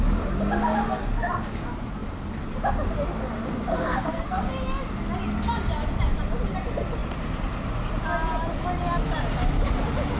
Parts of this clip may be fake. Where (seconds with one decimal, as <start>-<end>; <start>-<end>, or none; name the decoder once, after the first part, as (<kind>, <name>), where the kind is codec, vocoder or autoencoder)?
3.7-4.5 (codec, SNAC)